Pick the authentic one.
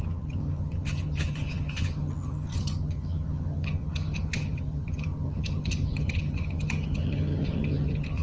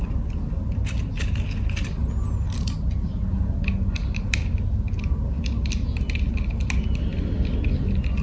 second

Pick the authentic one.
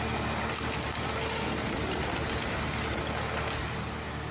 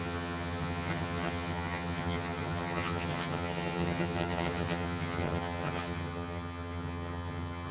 first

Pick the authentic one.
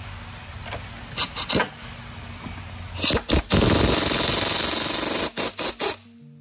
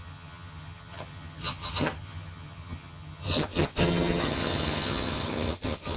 first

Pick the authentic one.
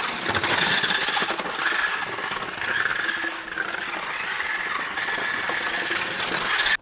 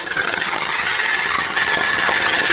first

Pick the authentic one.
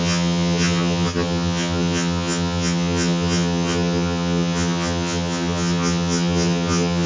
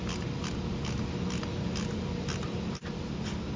second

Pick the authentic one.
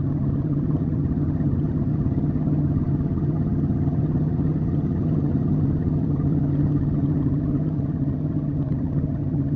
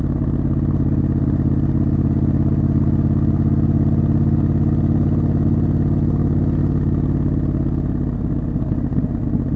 second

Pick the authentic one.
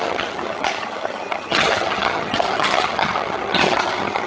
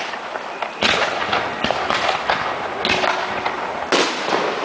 second